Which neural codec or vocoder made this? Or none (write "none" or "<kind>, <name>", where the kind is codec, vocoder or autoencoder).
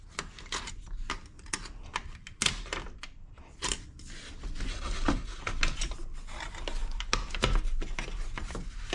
none